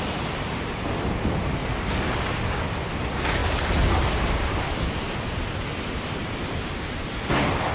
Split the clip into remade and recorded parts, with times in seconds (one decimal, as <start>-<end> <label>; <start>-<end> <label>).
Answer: 0.0-1.6 recorded; 1.6-2.4 remade; 2.4-7.7 recorded